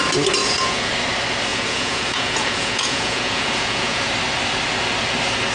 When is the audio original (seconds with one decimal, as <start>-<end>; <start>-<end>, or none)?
0.0-0.4; 0.9-1.5; 4.1-5.5